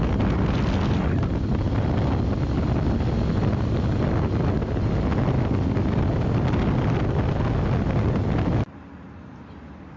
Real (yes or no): yes